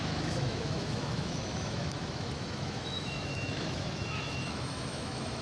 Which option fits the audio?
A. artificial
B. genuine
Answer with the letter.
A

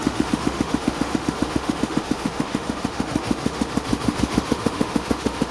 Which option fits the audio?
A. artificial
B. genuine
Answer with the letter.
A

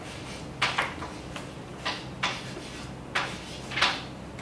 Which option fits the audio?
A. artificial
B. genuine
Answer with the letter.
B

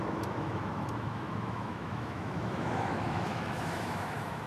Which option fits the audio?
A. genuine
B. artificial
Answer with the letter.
B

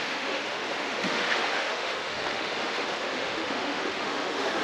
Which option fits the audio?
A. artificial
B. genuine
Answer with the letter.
A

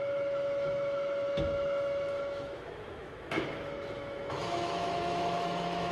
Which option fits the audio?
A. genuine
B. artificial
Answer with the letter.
B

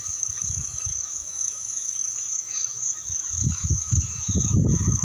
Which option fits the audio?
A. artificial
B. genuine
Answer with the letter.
A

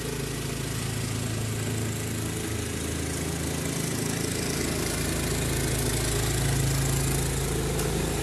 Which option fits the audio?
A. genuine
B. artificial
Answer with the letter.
A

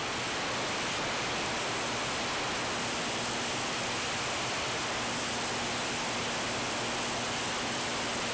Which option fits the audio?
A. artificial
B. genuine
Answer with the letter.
B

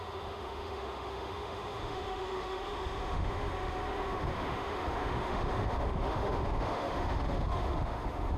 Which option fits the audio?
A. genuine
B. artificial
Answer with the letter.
B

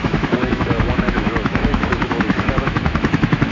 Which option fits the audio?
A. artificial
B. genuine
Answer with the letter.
A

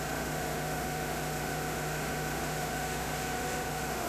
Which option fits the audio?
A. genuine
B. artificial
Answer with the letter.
B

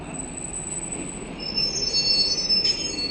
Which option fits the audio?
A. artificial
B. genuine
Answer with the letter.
B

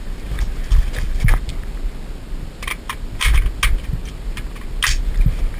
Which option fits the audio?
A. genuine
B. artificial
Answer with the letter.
A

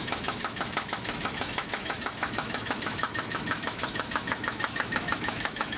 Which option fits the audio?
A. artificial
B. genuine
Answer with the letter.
A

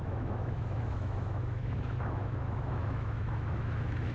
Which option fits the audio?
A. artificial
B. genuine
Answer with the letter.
A